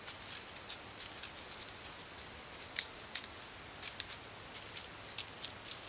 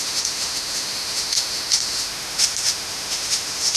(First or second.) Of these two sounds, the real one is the first